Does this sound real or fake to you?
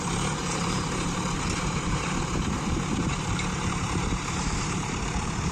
fake